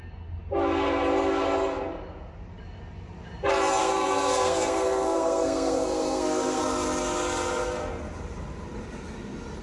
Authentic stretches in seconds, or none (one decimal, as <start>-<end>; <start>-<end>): 0.0-3.8; 6.6-9.6